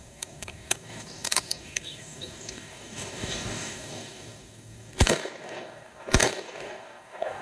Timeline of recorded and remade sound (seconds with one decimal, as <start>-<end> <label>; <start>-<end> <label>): 0.0-7.4 remade